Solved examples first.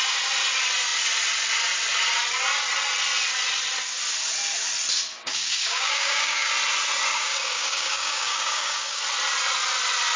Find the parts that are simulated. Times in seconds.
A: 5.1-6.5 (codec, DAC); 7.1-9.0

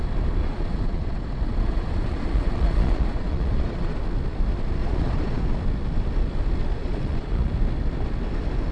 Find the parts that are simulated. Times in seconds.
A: 0.4-4.0 (vocoder, Vocos); 4.8-5.4; 6.8-7.5